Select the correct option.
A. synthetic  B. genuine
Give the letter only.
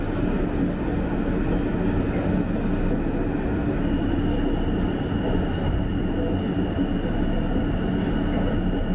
B